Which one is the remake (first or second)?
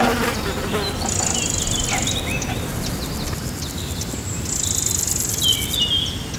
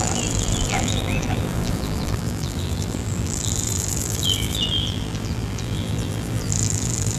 second